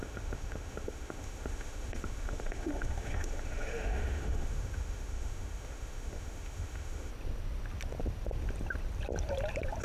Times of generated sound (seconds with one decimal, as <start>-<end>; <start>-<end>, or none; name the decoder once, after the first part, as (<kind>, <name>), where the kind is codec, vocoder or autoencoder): 0.0-7.1 (autoencoder, DAC-VAE)